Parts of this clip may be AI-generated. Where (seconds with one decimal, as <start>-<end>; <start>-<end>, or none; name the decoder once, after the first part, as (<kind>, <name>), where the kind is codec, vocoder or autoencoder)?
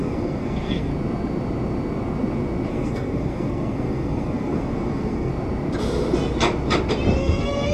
0.0-0.9 (codec, SNAC); 2.7-5.3; 7.2-7.7